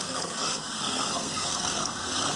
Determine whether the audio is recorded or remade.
remade